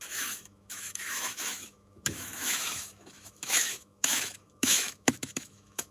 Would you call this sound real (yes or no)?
no